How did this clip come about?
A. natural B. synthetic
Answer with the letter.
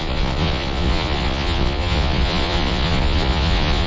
B